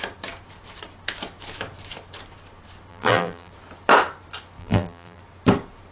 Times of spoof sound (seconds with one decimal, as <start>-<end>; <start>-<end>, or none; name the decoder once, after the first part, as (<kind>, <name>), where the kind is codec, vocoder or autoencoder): 2.9-3.5 (vocoder, BigVGAN v2); 4.6-5.2